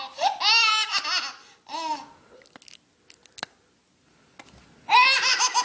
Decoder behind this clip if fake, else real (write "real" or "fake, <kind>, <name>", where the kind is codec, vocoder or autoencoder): real